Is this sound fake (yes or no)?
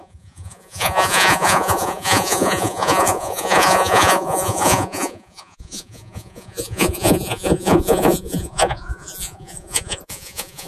yes